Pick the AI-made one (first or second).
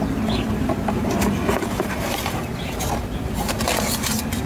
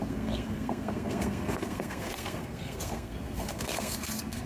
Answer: second